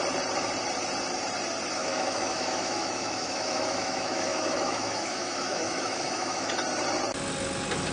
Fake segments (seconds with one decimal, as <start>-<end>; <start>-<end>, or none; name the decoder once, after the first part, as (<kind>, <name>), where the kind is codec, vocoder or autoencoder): 1.8-6.5 (autoencoder, DAC-VAE)